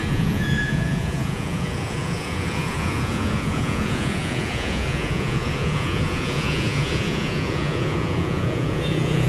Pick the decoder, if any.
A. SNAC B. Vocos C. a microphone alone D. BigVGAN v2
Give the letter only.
B